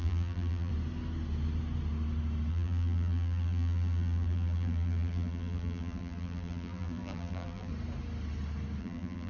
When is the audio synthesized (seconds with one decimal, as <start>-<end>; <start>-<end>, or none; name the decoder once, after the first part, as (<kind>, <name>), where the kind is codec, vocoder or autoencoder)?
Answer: 0.0-0.7 (vocoder, BigVGAN v2); 2.5-7.7; 8.8-9.3